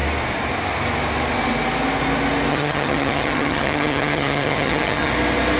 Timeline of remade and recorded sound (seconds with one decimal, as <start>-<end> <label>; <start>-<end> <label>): 0.0-2.5 recorded; 2.5-5.1 remade; 5.1-5.6 recorded